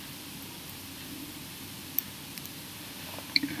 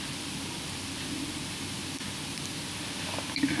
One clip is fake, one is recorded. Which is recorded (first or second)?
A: second